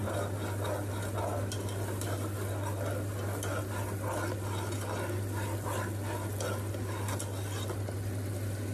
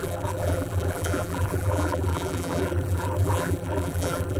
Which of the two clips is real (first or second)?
first